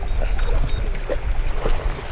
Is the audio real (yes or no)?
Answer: yes